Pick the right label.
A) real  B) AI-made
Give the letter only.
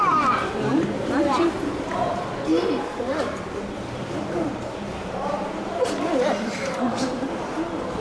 B